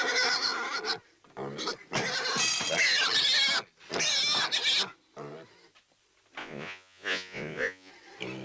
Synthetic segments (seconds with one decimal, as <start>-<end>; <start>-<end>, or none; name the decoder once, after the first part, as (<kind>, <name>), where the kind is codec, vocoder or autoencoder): 6.4-7.9 (vocoder, Vocos)

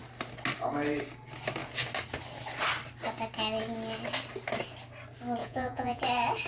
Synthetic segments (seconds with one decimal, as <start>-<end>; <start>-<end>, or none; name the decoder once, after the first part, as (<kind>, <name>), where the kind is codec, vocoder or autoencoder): 5.4-6.0 (vocoder, Vocos)

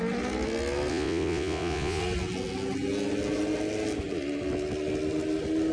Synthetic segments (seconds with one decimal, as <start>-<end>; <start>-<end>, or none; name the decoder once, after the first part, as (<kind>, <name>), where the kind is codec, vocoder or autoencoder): 0.9-2.0 (vocoder, Vocos)

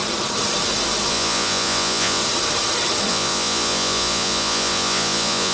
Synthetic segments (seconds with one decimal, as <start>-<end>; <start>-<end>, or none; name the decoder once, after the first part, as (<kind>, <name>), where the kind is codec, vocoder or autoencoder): 1.1-2.2 (vocoder, Vocos); 3.1-5.5

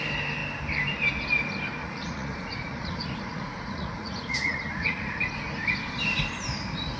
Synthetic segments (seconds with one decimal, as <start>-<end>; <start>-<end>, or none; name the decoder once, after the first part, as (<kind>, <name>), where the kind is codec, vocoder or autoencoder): 1.8-5.1 (vocoder, Vocos)

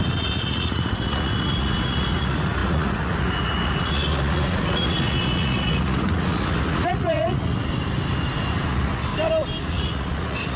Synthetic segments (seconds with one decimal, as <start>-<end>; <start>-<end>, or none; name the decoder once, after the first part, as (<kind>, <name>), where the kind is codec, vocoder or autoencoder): 0.0-7.7 (vocoder, Vocos); 8.5-9.1; 9.6-10.6

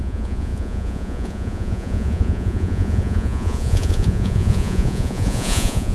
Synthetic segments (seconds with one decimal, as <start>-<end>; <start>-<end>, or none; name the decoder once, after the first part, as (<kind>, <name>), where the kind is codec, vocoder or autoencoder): 0.0-5.9 (vocoder, Vocos)

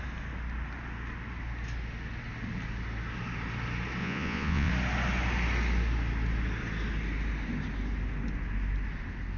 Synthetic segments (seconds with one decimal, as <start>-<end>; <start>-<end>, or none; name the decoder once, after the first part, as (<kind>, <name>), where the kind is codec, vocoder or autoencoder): 4.0-4.7 (vocoder, Vocos)